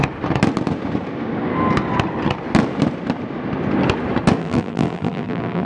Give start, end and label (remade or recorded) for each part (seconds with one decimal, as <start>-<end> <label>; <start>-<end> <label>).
0.0-4.4 recorded; 4.4-5.7 remade

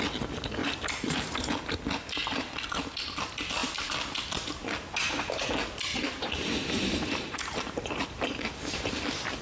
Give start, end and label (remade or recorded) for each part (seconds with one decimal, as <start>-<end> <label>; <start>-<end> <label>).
0.0-0.6 recorded; 0.6-1.5 remade; 1.5-5.9 recorded; 5.9-8.3 remade; 8.3-9.4 recorded